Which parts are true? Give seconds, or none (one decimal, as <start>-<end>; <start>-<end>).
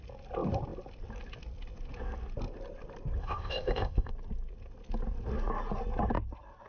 0.0-3.2; 4.1-6.7